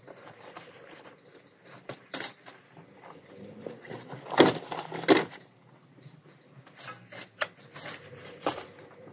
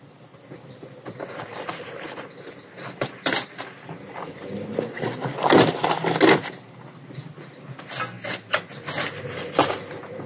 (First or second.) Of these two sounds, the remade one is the first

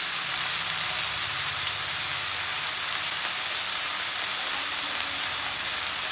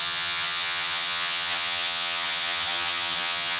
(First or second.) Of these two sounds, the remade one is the second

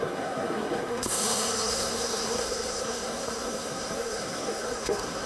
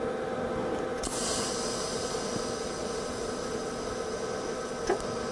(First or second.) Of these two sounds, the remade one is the first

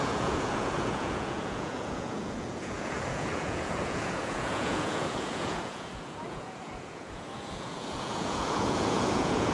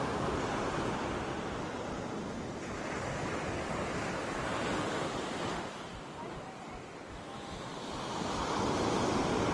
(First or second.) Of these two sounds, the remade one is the first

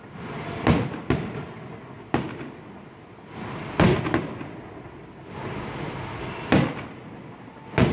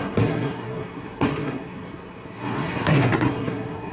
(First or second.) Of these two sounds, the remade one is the second